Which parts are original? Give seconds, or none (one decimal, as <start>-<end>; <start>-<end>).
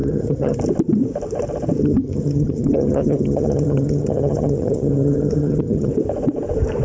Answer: 0.6-1.8; 5.9-6.8